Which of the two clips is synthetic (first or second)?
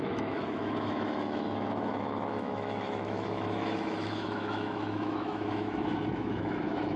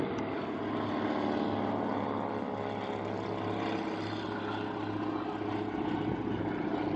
first